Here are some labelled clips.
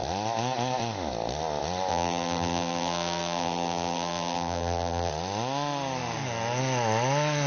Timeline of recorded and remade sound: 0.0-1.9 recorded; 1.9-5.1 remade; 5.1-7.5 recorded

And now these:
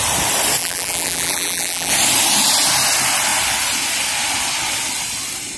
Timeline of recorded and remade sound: 0.0-0.6 recorded; 0.6-1.9 remade; 1.9-5.6 recorded

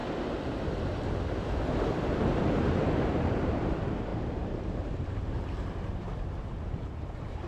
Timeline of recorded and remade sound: 0.0-2.4 recorded; 2.4-7.5 remade